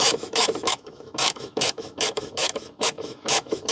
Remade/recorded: remade